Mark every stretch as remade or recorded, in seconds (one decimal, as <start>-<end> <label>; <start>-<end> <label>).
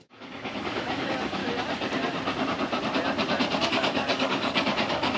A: 0.0-1.4 remade; 1.4-3.6 recorded; 3.6-5.2 remade